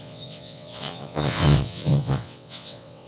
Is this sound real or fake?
fake